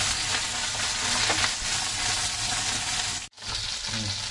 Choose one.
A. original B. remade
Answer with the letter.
A